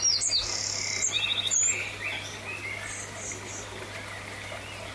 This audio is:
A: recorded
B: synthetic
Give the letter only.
A